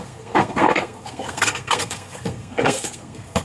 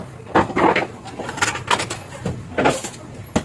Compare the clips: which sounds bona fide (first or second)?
second